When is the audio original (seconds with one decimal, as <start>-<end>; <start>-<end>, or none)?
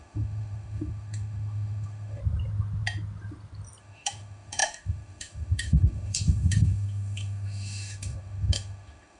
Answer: 2.2-3.8